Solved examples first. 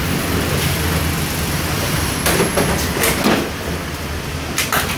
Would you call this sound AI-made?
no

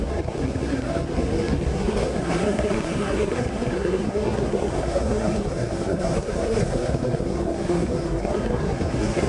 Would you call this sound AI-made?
yes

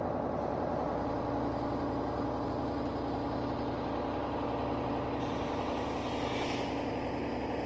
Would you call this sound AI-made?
no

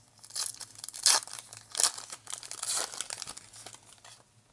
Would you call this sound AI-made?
no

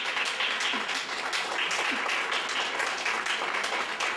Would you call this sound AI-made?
no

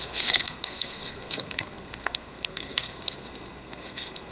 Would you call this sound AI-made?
yes